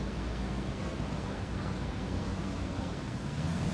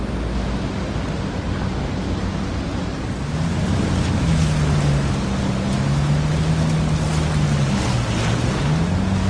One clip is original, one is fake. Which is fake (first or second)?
first